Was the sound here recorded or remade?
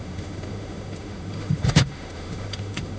remade